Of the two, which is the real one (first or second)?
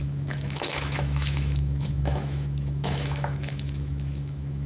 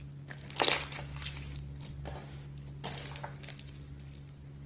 second